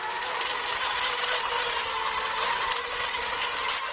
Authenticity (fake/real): real